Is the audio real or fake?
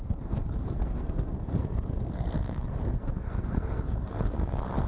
fake